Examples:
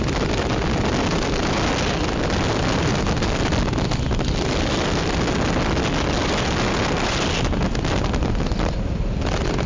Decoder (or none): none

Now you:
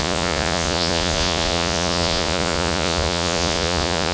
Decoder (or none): vocoder, Vocos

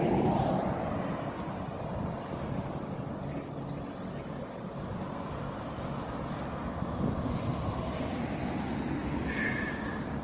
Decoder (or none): none